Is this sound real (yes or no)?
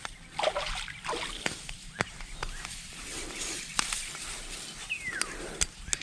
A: yes